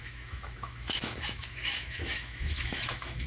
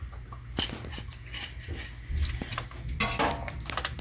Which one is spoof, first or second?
first